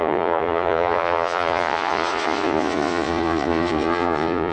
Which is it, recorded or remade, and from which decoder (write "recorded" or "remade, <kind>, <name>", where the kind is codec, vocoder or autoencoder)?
remade, vocoder, Vocos